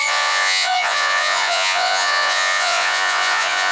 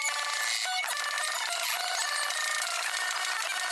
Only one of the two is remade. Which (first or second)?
first